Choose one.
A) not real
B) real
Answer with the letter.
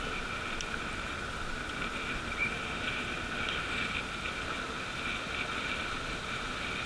B